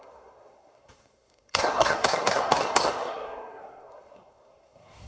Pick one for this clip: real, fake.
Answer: fake